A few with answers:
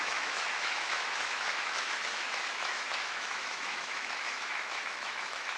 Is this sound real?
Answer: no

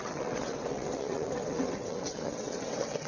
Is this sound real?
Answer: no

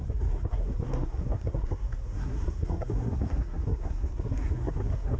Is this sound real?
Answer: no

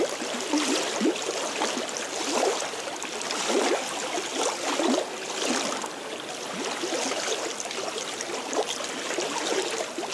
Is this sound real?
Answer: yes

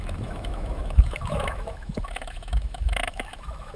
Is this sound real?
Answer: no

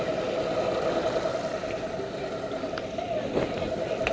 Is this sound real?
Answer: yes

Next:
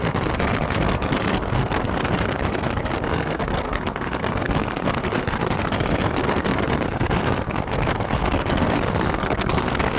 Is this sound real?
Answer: no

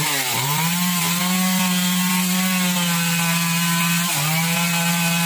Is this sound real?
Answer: yes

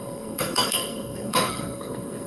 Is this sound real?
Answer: no